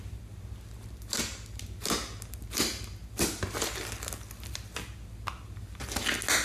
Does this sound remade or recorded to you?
recorded